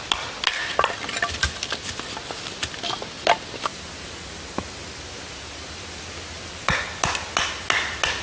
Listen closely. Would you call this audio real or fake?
real